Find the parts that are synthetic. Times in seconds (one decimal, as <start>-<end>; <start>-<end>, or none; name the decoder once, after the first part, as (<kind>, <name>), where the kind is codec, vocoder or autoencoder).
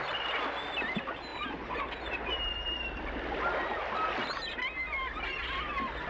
none